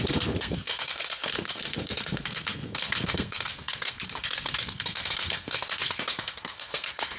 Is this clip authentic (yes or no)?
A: no